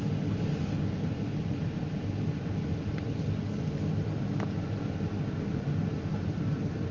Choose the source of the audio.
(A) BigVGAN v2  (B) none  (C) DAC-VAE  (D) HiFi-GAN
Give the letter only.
B